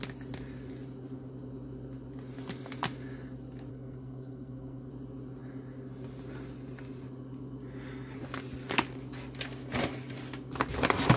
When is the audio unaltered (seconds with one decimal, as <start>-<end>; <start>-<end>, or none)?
0.0-3.7; 4.9-11.2